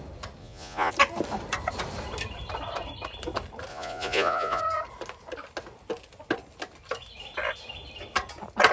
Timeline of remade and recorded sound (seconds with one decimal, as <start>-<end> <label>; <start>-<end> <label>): 0.0-0.4 recorded; 0.4-0.9 remade; 0.9-3.7 recorded; 3.7-4.6 remade; 4.6-8.7 recorded